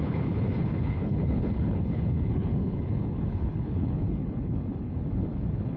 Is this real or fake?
fake